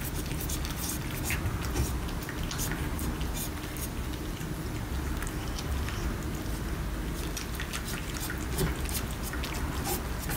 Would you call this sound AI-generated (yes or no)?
no